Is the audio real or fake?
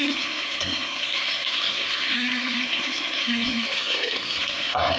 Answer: fake